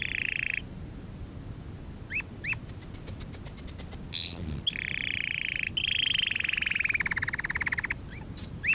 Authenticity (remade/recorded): recorded